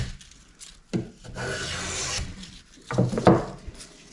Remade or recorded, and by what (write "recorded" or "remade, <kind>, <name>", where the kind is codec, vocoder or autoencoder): recorded